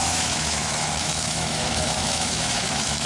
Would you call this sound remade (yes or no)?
yes